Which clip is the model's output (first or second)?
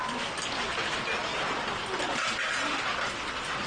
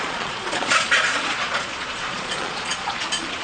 second